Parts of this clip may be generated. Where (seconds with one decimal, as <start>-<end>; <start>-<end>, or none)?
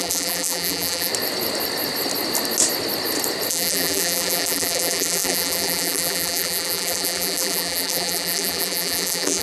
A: 0.0-1.1; 3.5-9.4